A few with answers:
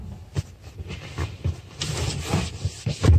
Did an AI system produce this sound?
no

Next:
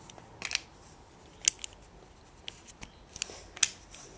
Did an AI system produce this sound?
no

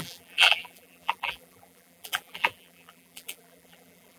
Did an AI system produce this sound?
yes